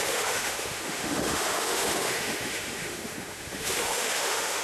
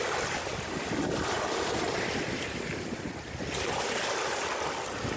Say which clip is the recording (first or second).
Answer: second